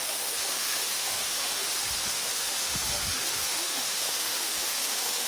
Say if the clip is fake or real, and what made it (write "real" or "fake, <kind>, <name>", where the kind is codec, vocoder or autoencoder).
fake, autoencoder, DAC-VAE